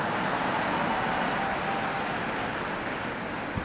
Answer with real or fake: real